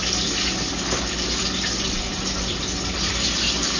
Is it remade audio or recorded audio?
recorded